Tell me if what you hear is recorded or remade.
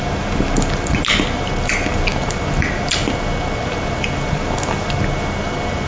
recorded